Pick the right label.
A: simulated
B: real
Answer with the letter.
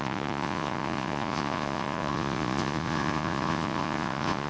A